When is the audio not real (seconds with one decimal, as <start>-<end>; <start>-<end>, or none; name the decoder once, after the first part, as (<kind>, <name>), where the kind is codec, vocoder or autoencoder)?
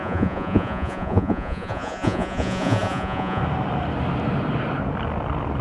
0.0-3.4 (vocoder, Vocos)